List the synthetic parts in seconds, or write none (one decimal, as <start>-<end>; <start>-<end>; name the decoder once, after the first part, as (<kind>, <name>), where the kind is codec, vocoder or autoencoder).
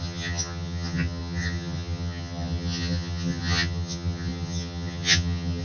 0.0-5.6 (vocoder, HiFi-GAN)